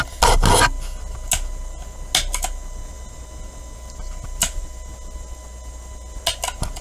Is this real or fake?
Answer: real